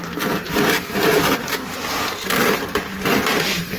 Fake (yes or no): yes